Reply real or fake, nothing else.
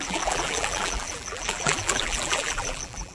fake